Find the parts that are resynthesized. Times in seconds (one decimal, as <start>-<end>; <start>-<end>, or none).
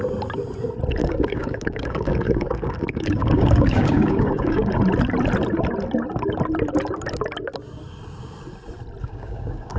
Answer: 1.0-4.7; 9.0-9.8